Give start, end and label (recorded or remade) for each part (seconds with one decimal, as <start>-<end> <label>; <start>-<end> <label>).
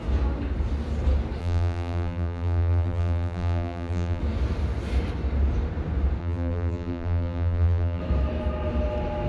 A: 0.0-1.4 recorded; 1.4-4.2 remade; 4.2-6.2 recorded; 6.2-8.0 remade; 8.0-9.3 recorded